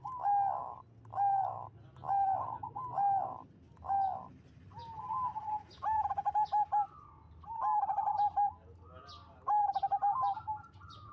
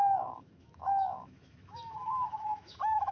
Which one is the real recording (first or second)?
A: first